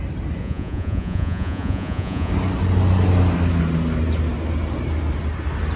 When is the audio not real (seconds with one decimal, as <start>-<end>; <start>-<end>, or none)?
0.4-2.3